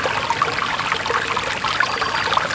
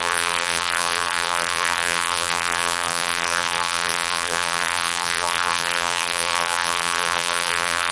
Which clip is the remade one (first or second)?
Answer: second